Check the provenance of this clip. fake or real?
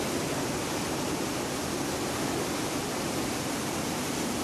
real